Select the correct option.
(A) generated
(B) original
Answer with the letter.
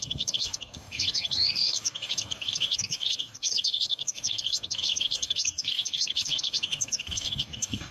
A